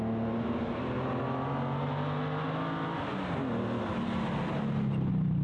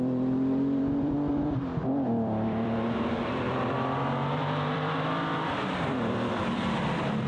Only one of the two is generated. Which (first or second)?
second